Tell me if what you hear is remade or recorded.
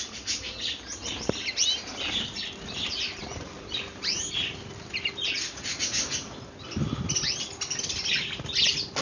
recorded